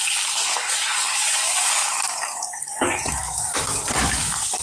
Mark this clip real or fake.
fake